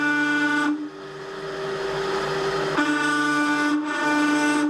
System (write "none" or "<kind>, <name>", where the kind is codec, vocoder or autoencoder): none